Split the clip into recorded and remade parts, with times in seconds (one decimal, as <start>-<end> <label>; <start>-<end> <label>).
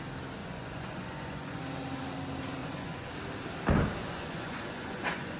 0.0-0.4 recorded; 0.4-1.6 remade; 1.6-2.6 recorded; 2.6-3.1 remade; 3.1-4.0 recorded; 4.0-5.4 remade